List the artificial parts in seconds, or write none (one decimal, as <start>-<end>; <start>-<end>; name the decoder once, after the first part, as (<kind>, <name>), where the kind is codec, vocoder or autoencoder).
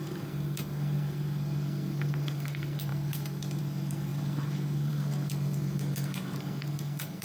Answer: 0.0-7.2 (codec, SNAC)